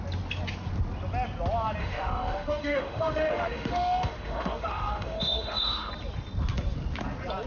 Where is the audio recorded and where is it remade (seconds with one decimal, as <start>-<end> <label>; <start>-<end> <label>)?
0.0-1.8 recorded; 1.8-5.9 remade; 5.9-7.5 recorded